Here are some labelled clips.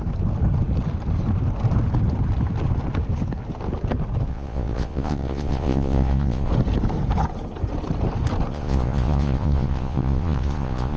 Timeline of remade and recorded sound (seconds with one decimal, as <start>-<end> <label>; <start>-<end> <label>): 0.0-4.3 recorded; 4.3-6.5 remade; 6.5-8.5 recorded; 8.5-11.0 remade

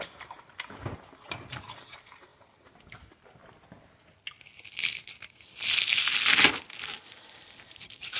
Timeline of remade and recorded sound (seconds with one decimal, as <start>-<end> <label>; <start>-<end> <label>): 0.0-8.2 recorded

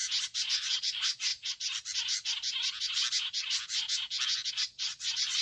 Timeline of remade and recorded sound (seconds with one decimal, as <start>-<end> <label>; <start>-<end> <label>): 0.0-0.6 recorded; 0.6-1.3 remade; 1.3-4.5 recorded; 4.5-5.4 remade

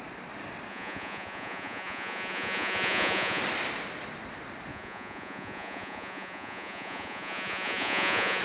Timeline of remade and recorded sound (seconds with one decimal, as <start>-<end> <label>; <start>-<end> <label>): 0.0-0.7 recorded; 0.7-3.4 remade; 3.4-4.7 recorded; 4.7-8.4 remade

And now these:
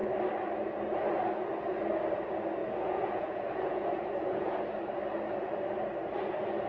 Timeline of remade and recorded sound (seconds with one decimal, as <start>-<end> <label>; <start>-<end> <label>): 0.0-2.6 recorded; 2.6-4.6 remade; 4.6-6.7 recorded

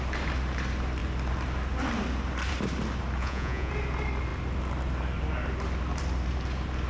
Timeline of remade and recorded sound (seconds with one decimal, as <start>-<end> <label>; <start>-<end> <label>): 0.0-3.2 recorded; 3.2-3.7 remade; 3.7-6.9 recorded

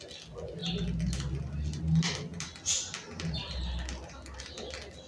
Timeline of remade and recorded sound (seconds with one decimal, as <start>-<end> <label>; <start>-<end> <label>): 0.0-5.1 recorded